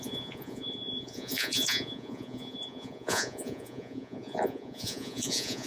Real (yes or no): no